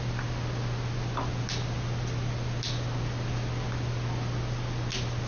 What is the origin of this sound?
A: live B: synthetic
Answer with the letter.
A